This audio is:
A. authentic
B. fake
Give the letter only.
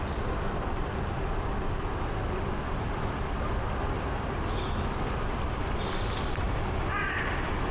A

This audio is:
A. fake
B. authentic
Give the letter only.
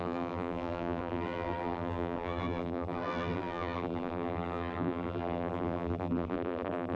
A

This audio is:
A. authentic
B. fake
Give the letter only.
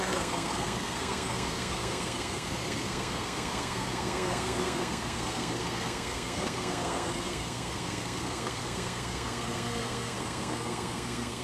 B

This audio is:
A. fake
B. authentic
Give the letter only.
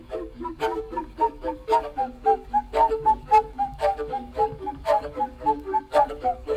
A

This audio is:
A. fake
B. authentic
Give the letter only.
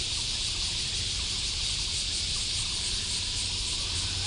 A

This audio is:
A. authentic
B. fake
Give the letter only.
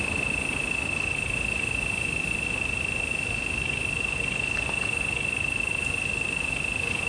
A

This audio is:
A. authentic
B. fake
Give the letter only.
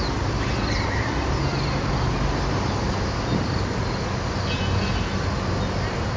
A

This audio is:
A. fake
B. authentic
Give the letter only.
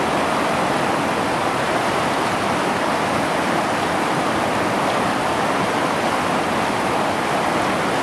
B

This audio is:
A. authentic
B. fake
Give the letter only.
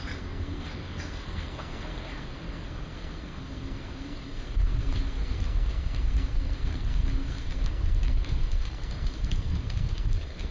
B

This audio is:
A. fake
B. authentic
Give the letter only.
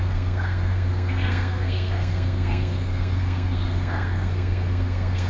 A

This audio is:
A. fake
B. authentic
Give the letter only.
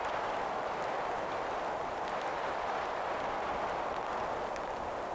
B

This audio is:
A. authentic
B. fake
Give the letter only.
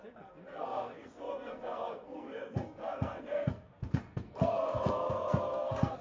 B